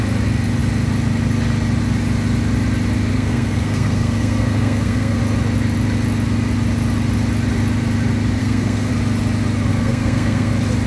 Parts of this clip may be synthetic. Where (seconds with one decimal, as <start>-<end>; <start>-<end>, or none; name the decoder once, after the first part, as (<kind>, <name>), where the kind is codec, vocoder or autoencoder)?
3.1-5.2 (codec, SNAC); 8.4-8.9; 9.7-10.5